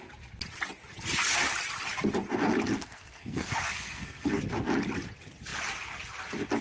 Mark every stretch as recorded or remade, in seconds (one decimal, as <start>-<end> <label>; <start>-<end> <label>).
0.0-2.7 recorded; 2.7-4.4 remade; 4.4-6.6 recorded